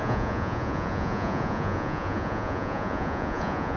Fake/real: fake